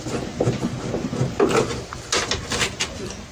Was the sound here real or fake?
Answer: real